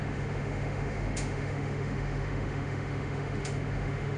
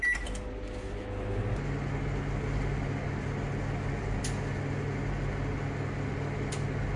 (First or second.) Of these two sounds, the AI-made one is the first